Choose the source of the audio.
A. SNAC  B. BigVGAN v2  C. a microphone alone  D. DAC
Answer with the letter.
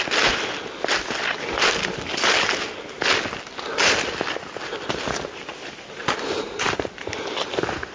C